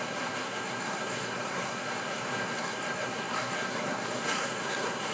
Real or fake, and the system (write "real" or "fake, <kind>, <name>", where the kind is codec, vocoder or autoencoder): fake, codec, SNAC